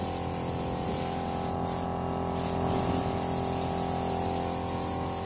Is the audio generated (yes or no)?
no